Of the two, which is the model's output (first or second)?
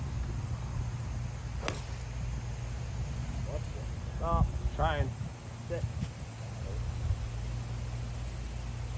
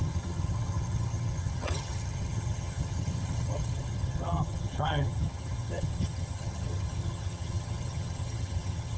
second